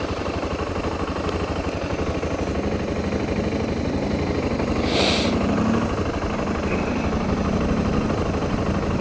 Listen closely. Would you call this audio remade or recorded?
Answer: recorded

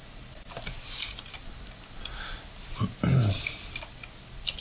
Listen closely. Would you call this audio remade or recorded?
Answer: recorded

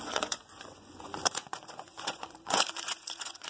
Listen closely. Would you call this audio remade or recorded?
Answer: remade